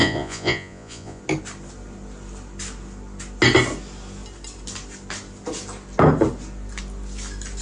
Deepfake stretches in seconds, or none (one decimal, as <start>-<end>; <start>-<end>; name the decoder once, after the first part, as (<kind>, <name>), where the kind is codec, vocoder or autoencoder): 0.0-1.2 (vocoder, Vocos)